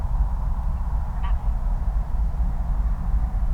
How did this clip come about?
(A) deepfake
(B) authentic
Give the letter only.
B